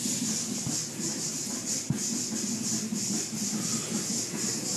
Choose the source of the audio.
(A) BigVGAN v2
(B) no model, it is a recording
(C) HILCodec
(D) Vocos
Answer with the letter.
B